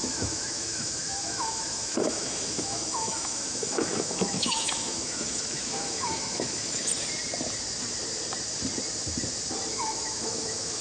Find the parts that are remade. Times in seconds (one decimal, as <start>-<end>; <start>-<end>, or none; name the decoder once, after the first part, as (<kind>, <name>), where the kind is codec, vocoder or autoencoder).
0.0-6.9 (autoencoder, DAC-VAE); 9.7-10.8